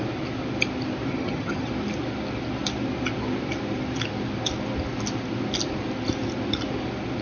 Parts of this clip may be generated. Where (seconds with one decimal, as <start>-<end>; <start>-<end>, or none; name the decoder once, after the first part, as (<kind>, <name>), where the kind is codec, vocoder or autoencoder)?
1.1-1.7 (vocoder, HiFi-GAN)